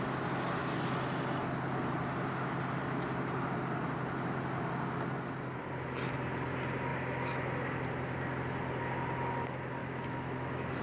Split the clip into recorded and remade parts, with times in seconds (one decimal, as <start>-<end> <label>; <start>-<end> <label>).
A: 0.0-9.8 recorded; 9.8-10.8 remade